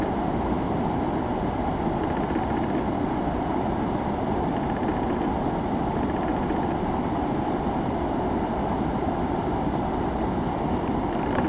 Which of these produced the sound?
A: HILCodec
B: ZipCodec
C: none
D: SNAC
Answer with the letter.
C